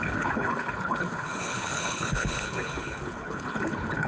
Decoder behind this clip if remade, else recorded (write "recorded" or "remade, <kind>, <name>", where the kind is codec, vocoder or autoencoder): remade, codec, HILCodec